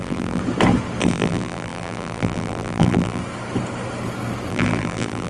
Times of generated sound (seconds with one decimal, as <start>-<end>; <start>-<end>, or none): 0.0-0.4; 1.0-3.2; 4.5-5.3